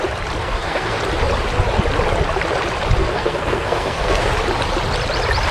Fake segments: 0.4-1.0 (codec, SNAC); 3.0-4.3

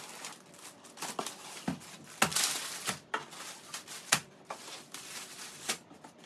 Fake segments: none

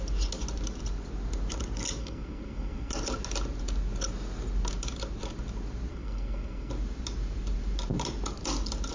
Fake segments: 2.0-2.9 (codec, SNAC); 5.9-6.7

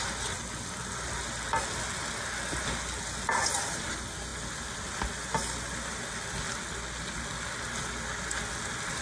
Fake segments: none

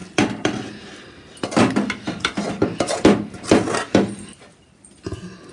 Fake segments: none

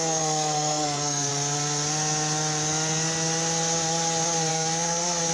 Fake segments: 0.0-1.3 (codec, SNAC); 4.5-5.3

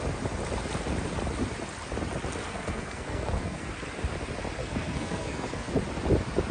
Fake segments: 2.4-3.7 (codec, SNAC); 4.6-5.7

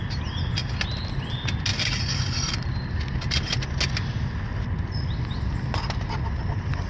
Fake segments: none